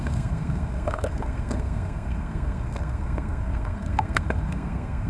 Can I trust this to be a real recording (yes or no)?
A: no